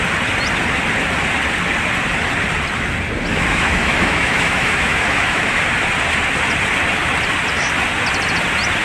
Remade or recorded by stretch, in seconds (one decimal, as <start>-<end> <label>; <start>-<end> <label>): 0.0-3.3 recorded; 3.3-5.6 remade; 5.6-8.8 recorded